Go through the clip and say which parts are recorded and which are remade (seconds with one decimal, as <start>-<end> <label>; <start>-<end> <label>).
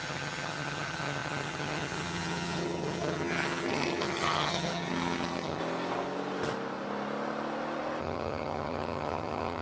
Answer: 0.0-5.6 remade; 5.6-8.0 recorded; 8.0-9.6 remade